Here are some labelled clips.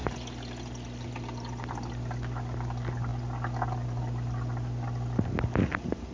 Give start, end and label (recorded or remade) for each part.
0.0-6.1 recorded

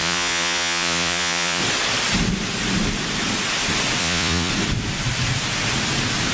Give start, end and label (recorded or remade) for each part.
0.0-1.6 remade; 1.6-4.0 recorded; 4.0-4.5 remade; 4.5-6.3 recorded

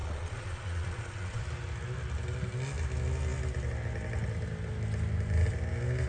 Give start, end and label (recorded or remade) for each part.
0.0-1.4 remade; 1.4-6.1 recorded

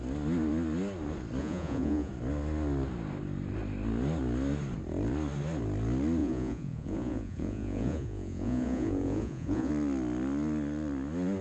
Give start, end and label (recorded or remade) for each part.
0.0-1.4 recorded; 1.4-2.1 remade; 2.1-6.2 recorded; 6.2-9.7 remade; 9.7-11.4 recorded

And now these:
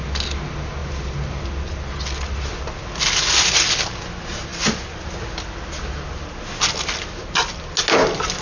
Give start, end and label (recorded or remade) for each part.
0.0-8.4 recorded